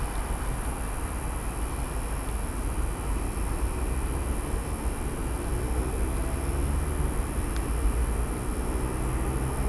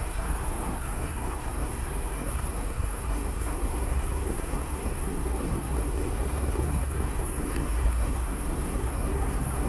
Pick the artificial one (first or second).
second